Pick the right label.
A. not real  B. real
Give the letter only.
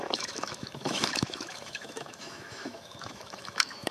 A